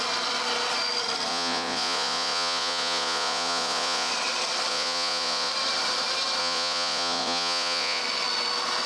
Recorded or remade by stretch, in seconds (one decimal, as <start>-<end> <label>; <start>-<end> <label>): 0.0-1.3 recorded; 1.3-4.1 remade; 4.1-4.7 recorded; 4.7-5.5 remade; 5.5-6.4 recorded; 6.4-8.0 remade; 8.0-8.9 recorded

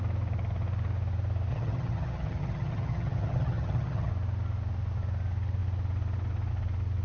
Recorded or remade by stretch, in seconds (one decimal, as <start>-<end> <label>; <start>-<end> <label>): 0.0-1.5 recorded; 1.5-4.1 remade; 4.1-7.0 recorded

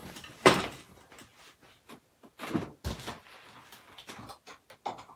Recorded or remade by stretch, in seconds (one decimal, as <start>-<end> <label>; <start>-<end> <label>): 0.0-0.6 remade; 0.6-5.2 recorded

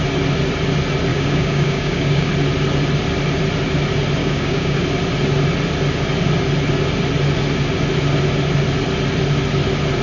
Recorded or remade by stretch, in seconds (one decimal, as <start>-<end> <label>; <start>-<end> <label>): 0.0-1.1 recorded; 1.1-2.3 remade; 2.3-4.2 recorded; 4.2-4.8 remade; 4.8-10.0 recorded

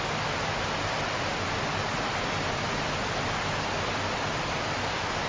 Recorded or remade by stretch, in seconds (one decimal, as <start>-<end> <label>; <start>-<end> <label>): 0.0-5.3 recorded

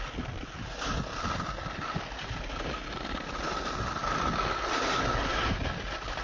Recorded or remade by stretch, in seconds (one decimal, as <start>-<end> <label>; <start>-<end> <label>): 0.0-6.2 recorded

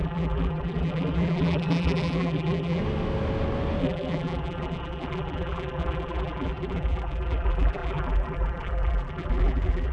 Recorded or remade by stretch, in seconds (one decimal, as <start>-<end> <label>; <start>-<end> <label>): 0.0-2.8 remade; 2.8-3.8 recorded; 3.8-9.9 remade

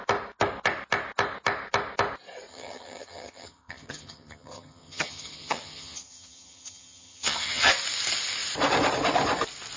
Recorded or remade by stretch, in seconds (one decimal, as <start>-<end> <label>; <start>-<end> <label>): 0.0-2.5 recorded; 2.5-7.7 remade; 7.7-9.8 recorded